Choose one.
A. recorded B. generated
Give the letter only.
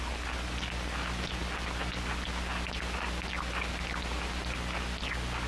A